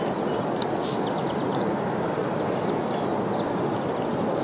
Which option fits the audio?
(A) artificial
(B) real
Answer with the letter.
B